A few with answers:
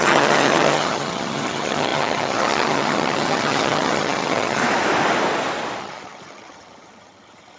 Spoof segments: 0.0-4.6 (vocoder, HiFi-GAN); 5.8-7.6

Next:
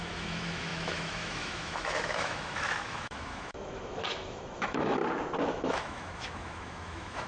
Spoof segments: 0.0-5.0 (autoencoder, DAC-VAE); 5.5-7.3

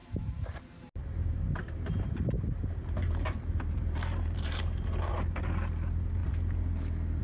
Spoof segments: 0.0-0.6 (vocoder, BigVGAN v2); 1.0-4.6

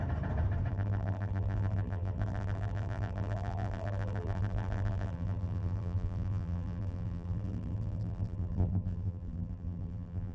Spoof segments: 0.7-10.3 (vocoder, BigVGAN v2)

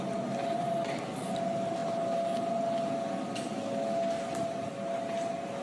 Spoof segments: none

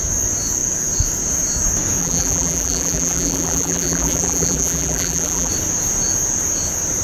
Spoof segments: 2.0-5.5 (vocoder, BigVGAN v2)

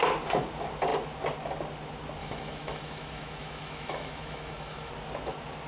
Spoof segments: 2.2-4.9 (autoencoder, DAC-VAE)